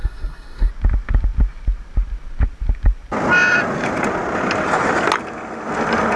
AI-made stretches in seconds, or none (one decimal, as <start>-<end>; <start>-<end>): 0.0-0.7